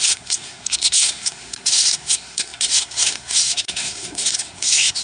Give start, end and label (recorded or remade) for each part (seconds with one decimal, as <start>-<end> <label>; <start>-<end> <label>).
0.0-5.0 remade